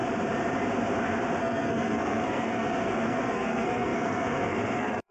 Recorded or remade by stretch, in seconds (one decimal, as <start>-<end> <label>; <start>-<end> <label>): 0.0-1.4 recorded; 1.4-5.1 remade